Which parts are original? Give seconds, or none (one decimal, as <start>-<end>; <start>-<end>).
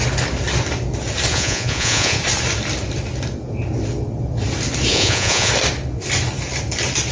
0.0-1.3; 2.2-4.9; 5.5-7.1